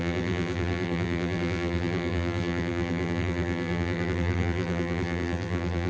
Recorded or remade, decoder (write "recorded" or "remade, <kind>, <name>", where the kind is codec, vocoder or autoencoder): remade, vocoder, BigVGAN v2